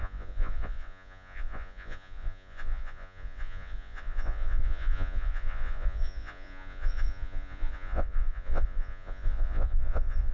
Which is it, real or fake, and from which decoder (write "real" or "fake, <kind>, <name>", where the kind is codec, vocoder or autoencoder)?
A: fake, vocoder, Vocos